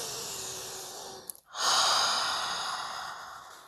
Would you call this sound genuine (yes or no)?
yes